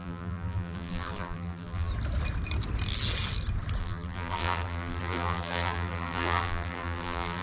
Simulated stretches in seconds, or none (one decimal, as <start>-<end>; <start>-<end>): 0.0-1.9; 3.8-7.4